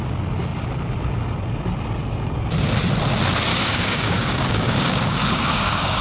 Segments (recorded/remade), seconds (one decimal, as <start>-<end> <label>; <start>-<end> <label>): 0.0-3.5 recorded; 3.5-6.0 remade